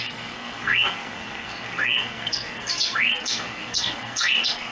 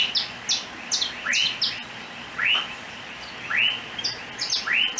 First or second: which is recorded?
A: second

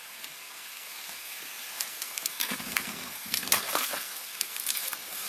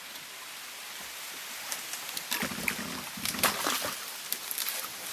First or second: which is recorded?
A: second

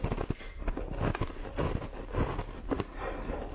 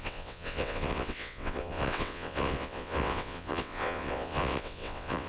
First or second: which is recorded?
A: first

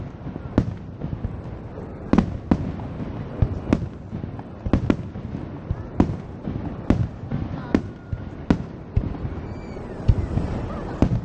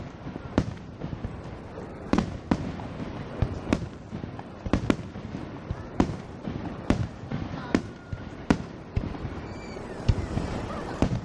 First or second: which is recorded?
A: first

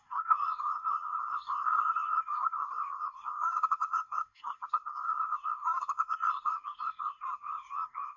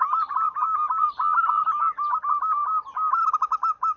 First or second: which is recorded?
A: second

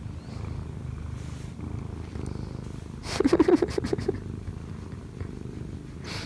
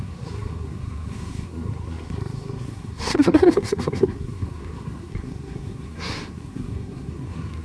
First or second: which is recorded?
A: first